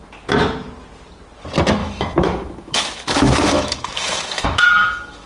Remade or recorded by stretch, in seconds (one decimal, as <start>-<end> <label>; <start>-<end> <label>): 0.0-1.8 recorded; 1.8-5.3 remade

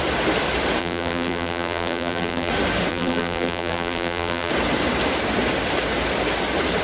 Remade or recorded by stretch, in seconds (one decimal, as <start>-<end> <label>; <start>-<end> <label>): 0.0-0.8 recorded; 0.8-2.5 remade; 2.5-2.9 recorded; 2.9-4.5 remade; 4.5-6.8 recorded

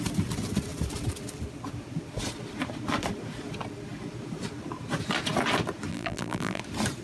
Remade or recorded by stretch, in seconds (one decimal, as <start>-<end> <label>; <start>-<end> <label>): 0.0-5.9 recorded; 5.9-6.6 remade; 6.6-7.0 recorded